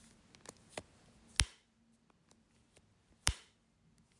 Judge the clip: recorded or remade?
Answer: recorded